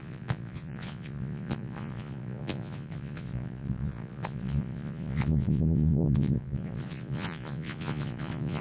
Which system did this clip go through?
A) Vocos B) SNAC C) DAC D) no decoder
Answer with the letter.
A